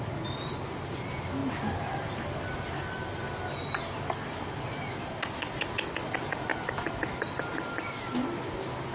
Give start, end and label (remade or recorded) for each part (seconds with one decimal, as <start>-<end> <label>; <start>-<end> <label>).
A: 0.0-8.9 recorded